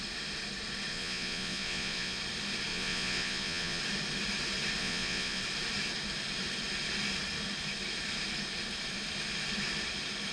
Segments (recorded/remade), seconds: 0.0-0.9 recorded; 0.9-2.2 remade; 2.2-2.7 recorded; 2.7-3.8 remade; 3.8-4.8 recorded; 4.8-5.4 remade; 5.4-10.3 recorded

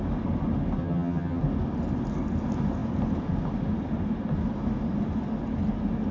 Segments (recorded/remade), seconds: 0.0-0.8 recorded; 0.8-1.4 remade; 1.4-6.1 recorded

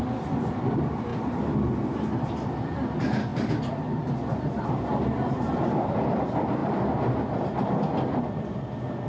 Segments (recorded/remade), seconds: 0.0-9.1 remade

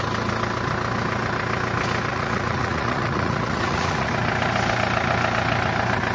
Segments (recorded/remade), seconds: 0.0-2.1 recorded; 2.1-4.1 remade; 4.1-6.1 recorded

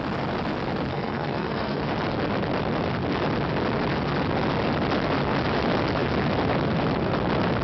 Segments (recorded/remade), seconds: 0.0-0.9 recorded; 0.9-1.8 remade; 1.8-7.6 recorded

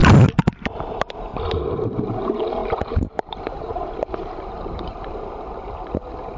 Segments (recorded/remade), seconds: 0.0-0.9 recorded; 0.9-1.3 remade; 1.3-2.1 recorded; 2.1-6.4 remade